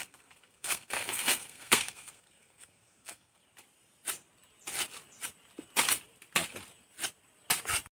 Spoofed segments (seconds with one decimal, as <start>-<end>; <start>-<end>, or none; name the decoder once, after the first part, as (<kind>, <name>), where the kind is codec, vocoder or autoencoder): 0.0-3.4 (codec, SNAC)